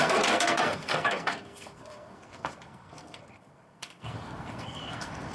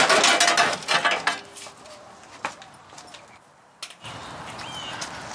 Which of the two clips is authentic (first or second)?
second